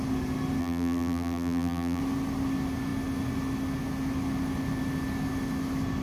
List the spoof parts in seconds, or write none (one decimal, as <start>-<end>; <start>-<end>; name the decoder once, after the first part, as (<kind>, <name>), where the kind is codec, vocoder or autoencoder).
0.6-2.0 (vocoder, BigVGAN v2)